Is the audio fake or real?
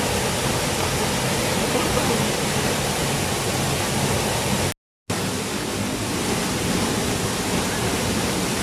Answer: real